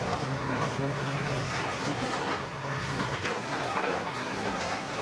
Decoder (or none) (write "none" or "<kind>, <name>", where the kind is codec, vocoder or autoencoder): codec, SNAC